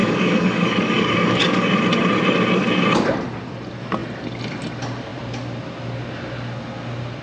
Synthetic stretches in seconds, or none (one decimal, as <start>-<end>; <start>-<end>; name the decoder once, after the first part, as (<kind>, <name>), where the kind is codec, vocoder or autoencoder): 0.0-1.7 (codec, DAC)